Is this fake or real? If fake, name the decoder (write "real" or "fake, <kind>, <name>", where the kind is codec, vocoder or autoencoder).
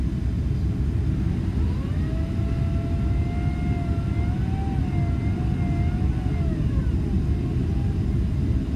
real